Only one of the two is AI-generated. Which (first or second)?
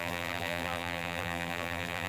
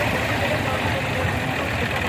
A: first